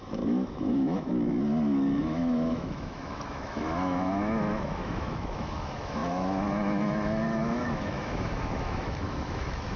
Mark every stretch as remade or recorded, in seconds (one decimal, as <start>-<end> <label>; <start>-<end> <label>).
0.0-1.1 remade; 1.1-2.0 recorded; 2.0-9.8 remade